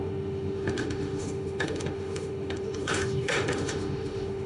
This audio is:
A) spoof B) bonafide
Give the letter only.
A